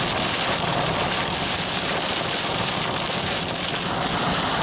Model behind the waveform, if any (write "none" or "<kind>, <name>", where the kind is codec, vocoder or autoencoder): none